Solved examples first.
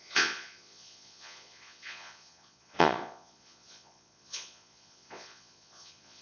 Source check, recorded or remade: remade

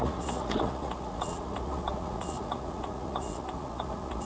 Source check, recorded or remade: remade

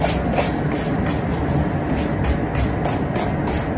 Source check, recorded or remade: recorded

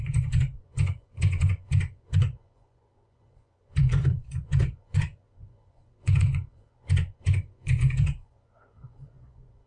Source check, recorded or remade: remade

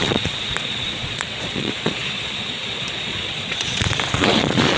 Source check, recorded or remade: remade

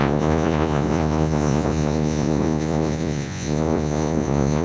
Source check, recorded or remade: remade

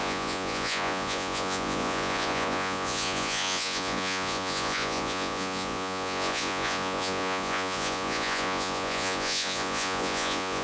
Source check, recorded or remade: remade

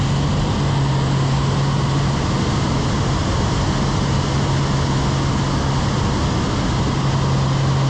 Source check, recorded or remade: recorded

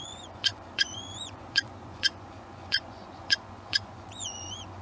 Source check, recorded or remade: remade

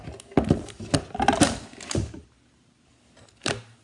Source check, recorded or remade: recorded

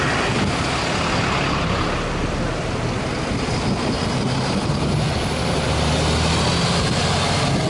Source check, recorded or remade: recorded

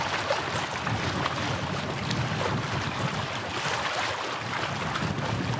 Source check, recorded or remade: recorded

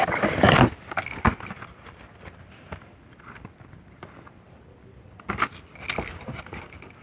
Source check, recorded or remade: recorded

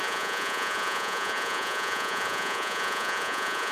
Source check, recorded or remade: remade